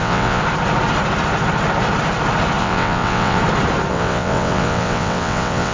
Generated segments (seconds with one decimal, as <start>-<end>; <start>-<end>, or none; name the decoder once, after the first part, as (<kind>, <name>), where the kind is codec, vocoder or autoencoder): 0.0-0.4 (vocoder, WaveNeXt); 2.6-3.4; 3.9-5.7

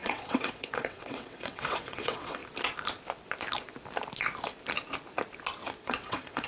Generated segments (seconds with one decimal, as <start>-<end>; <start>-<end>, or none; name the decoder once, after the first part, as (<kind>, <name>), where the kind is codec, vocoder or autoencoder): 0.0-2.4 (vocoder, WaveNeXt); 5.8-6.5

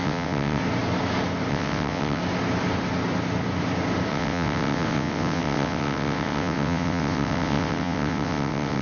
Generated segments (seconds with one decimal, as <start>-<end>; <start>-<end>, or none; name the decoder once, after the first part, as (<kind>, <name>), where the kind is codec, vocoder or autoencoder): 0.0-0.6 (vocoder, WaveNeXt); 1.5-2.2; 4.1-8.8

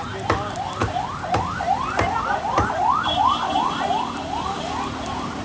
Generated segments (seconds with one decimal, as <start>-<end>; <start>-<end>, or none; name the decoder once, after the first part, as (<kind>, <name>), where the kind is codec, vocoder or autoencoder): none

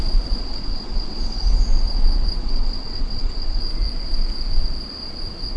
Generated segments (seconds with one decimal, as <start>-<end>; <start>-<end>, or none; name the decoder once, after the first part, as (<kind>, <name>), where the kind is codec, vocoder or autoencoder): 0.4-1.6 (vocoder, WaveNeXt); 2.4-3.6

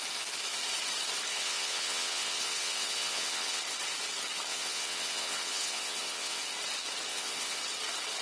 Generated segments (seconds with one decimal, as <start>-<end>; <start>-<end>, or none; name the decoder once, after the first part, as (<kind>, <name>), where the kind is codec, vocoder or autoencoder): 1.3-3.6 (vocoder, WaveNeXt); 4.5-6.4; 7.1-7.6

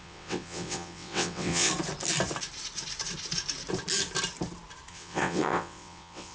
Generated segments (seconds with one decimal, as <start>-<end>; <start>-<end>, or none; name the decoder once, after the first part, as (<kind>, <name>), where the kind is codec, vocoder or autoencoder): 0.0-1.7 (vocoder, WaveNeXt); 4.9-6.3